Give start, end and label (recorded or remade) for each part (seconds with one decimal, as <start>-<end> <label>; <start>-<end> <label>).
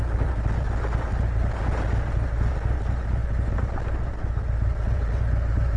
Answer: 0.0-5.8 recorded